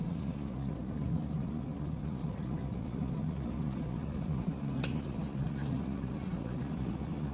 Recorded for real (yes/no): no